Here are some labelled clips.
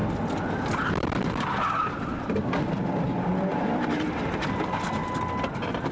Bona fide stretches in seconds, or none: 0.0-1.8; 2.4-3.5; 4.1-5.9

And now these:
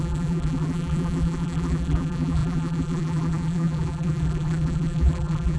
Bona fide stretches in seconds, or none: none

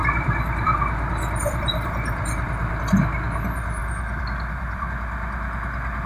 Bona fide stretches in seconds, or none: 2.7-3.8; 4.9-6.1

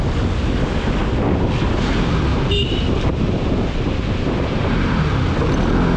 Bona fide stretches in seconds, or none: 0.0-2.3; 5.0-6.0

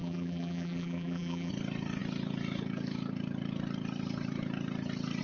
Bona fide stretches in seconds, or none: 1.5-5.2

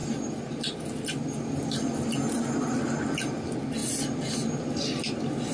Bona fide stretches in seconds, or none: 0.0-3.8; 4.3-5.5

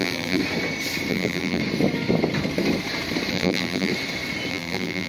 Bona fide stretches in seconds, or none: 0.4-1.1; 1.6-3.3; 3.9-4.5

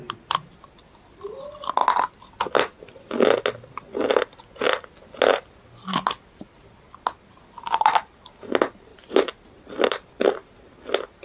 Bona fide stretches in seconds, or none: 0.0-8.9; 10.1-11.2